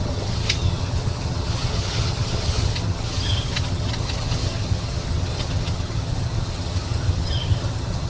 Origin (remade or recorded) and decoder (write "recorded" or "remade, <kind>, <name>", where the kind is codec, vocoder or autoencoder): remade, vocoder, HiFi-GAN